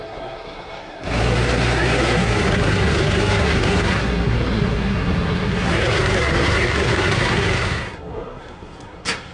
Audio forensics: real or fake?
fake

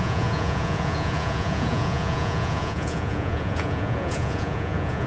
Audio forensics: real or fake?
fake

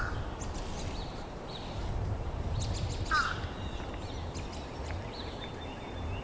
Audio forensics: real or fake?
real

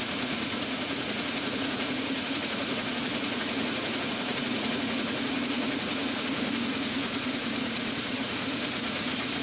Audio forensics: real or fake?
fake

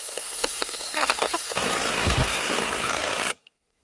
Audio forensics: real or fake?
fake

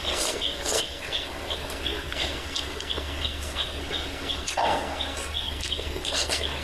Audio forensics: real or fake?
fake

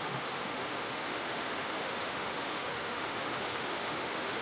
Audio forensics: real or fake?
fake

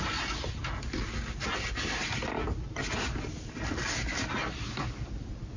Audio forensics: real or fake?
real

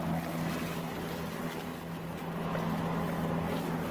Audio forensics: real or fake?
real